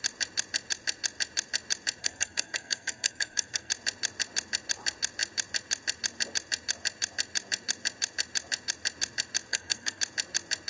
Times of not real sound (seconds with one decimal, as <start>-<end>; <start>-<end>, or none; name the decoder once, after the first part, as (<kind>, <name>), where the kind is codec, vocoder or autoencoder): 2.0-3.7 (codec, SNAC); 9.5-10.0